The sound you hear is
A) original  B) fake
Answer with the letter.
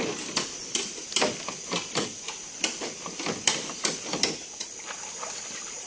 A